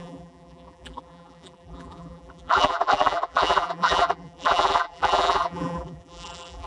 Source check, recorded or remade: remade